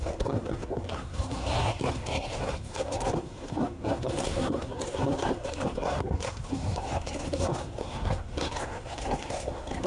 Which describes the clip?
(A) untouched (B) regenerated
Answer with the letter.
B